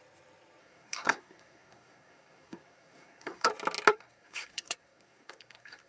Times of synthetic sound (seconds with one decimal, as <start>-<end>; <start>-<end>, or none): 0.6-3.5; 3.9-5.9

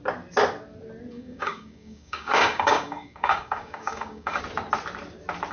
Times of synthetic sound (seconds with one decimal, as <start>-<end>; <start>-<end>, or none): 1.1-4.4

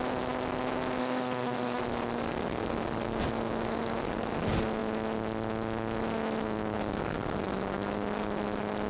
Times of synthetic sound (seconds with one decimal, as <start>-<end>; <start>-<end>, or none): 1.0-1.8

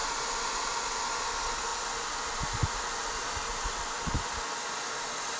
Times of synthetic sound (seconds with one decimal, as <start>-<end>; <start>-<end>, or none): none